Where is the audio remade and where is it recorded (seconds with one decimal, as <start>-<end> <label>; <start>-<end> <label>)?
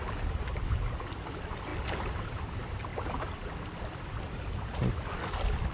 0.0-5.7 recorded